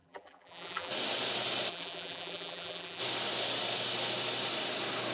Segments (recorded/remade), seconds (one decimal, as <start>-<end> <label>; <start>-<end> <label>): 0.0-0.9 remade; 0.9-1.7 recorded; 1.7-3.0 remade; 3.0-5.1 recorded